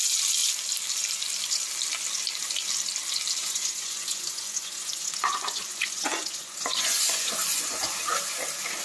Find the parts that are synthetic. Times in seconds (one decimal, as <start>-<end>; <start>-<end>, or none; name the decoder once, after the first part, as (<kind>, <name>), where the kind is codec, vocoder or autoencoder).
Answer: 3.4-8.0 (vocoder, Vocos)